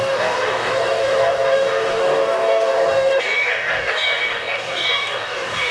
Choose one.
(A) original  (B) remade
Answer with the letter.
B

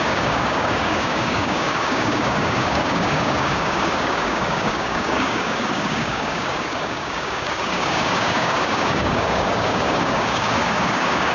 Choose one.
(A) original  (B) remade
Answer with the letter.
B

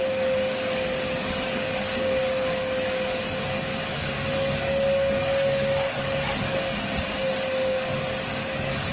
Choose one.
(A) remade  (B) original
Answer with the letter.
A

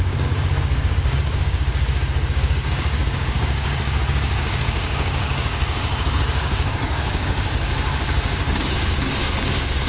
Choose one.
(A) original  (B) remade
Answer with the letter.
B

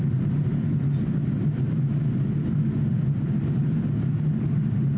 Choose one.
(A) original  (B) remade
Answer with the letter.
A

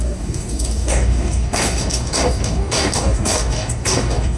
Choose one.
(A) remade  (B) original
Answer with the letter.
A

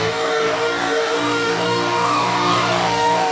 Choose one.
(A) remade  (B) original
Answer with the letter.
A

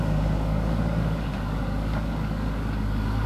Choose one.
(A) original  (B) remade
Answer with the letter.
B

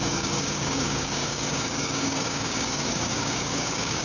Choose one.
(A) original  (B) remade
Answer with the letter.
B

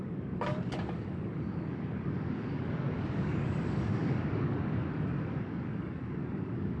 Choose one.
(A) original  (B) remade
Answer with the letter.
B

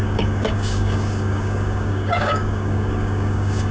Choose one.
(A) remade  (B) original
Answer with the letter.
A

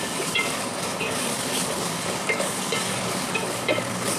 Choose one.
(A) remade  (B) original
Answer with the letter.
A